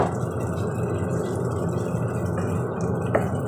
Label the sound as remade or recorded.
recorded